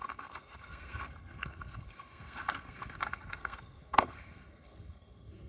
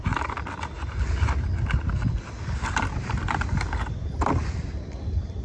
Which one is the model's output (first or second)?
first